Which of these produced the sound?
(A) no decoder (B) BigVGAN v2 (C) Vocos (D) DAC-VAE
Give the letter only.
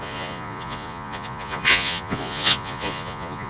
C